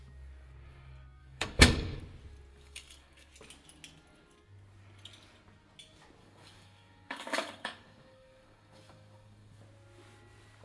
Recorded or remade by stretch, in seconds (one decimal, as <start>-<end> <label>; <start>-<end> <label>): 0.0-1.2 recorded; 1.2-2.0 remade; 2.0-2.5 recorded; 2.5-3.3 remade; 3.3-6.2 recorded; 6.2-9.6 remade; 9.6-10.6 recorded